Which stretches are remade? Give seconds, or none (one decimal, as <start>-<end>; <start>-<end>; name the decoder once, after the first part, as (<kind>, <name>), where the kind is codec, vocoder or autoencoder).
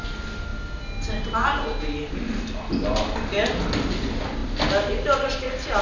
none